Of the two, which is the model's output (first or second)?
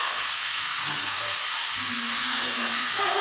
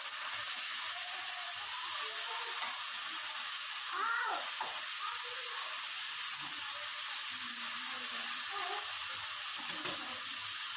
first